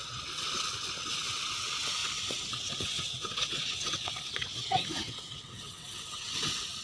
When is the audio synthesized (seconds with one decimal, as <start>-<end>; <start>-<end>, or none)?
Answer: 0.0-6.8